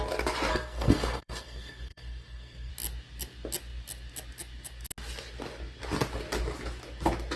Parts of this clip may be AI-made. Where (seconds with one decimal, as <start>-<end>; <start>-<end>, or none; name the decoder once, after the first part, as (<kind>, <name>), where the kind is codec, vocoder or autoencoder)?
0.5-2.7 (codec, SNAC)